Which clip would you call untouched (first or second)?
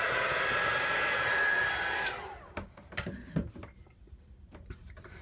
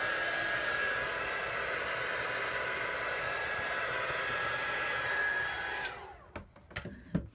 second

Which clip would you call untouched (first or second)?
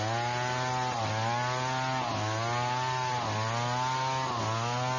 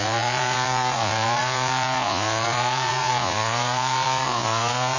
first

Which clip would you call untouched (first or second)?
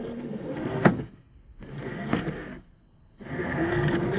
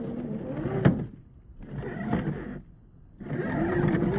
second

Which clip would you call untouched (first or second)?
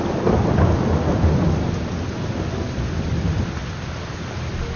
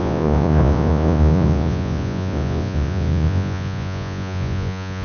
first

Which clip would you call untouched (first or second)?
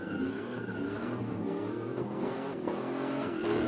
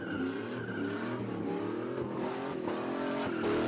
second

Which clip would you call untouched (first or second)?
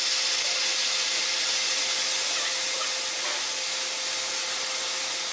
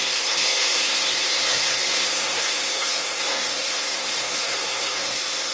first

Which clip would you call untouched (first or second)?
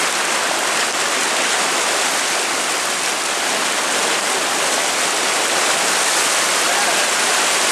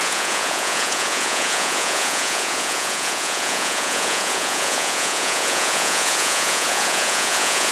first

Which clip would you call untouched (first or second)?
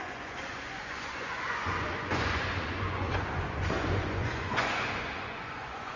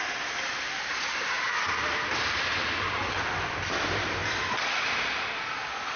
second